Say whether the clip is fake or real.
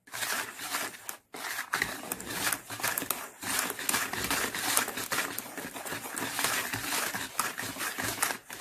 real